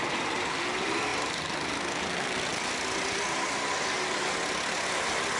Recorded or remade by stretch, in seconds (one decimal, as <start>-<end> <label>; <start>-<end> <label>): 0.0-1.1 recorded; 1.1-1.7 remade; 1.7-5.4 recorded